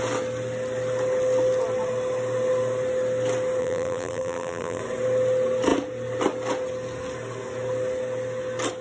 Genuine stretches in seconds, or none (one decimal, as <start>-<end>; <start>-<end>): 0.0-3.6; 4.8-8.8